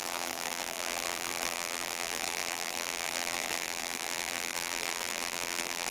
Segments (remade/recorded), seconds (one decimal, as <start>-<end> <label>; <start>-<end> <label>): 0.0-5.9 remade